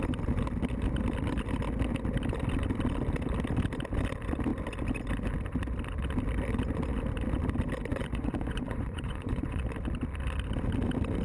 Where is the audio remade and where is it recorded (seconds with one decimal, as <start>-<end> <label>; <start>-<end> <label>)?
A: 0.0-7.9 recorded; 7.9-9.6 remade; 9.6-11.2 recorded